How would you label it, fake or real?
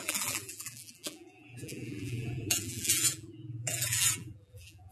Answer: fake